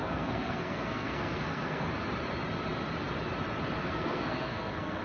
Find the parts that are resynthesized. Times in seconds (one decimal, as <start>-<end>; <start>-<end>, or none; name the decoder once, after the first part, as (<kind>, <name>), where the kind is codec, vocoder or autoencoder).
0.0-1.9 (codec, SNAC); 3.8-5.0